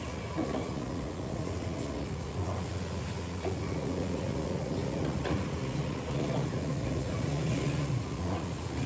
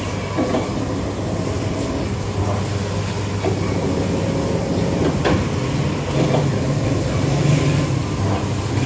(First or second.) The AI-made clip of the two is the first